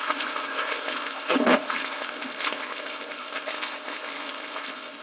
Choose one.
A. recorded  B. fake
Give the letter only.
B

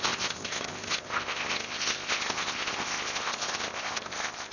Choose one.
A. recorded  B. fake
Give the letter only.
B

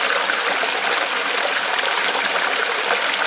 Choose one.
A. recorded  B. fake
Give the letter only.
A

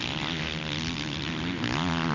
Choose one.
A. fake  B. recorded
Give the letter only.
B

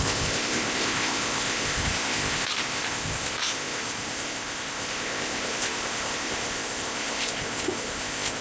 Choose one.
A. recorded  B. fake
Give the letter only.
B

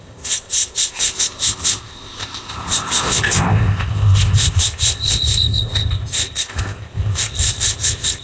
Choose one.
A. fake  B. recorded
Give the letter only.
A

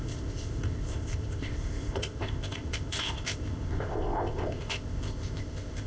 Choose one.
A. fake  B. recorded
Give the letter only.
A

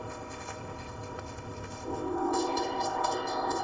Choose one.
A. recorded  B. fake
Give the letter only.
B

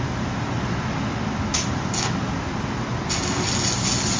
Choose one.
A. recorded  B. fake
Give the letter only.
A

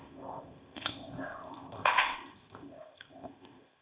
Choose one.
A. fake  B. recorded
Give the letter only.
A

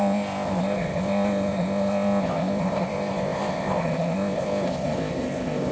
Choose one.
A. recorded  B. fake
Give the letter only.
B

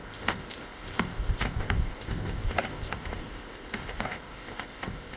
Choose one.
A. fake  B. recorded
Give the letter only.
A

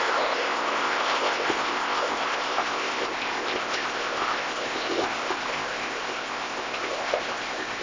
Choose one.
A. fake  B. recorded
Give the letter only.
A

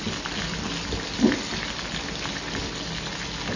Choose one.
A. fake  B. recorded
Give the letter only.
B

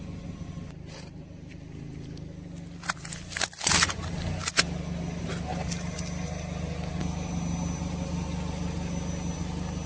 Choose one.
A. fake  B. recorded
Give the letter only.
B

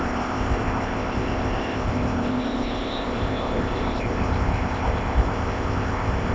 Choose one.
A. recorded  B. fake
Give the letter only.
B